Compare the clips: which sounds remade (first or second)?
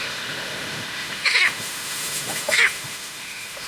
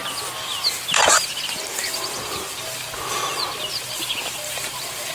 first